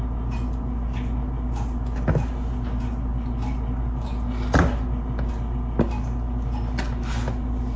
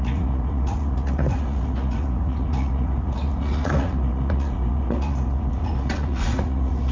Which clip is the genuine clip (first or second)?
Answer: first